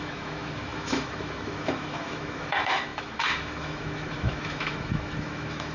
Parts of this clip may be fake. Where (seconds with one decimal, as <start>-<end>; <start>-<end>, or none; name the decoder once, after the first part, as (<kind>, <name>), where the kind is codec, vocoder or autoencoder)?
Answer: 0.0-5.7 (autoencoder, DAC-VAE)